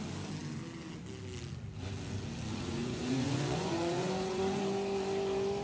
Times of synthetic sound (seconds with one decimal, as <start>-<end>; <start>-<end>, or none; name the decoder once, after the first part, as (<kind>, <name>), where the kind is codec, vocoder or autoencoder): 2.8-4.6 (vocoder, Vocos)

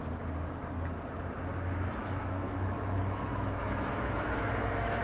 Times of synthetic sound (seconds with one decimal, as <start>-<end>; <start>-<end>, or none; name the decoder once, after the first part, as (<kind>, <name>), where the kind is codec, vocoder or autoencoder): 2.0-5.0 (autoencoder, DAC-VAE)